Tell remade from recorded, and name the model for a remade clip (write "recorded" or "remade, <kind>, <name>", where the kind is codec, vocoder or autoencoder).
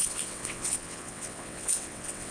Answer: remade, vocoder, WaveNeXt